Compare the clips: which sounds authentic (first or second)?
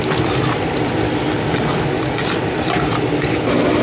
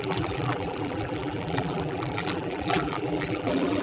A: first